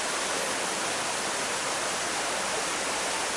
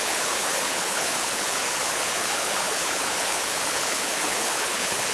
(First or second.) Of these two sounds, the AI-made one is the second